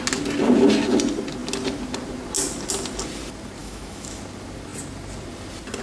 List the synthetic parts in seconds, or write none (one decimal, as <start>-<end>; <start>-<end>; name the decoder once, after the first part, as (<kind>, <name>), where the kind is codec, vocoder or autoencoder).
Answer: 3.6-4.2 (autoencoder, DAC-VAE)